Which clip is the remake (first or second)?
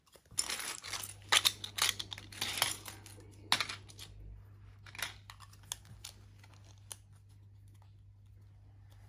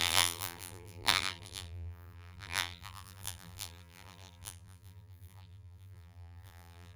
second